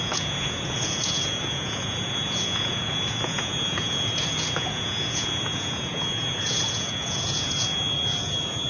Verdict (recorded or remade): remade